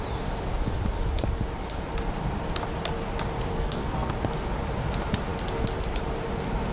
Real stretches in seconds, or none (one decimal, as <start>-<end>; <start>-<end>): 0.0-3.5; 4.1-6.7